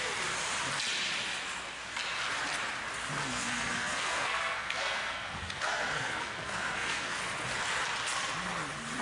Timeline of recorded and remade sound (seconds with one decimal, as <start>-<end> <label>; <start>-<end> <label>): 0.0-3.2 recorded; 3.2-7.2 remade; 7.2-9.0 recorded